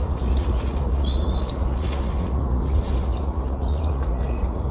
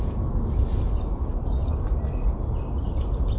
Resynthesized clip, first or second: first